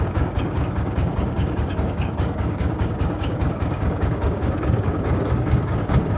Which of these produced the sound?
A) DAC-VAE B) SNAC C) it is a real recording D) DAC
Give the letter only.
D